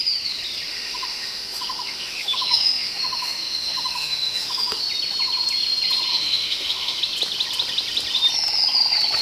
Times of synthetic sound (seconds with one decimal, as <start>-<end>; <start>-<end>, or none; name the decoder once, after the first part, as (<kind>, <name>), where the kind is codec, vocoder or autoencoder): 0.7-4.8 (autoencoder, DAC-VAE); 6.1-7.0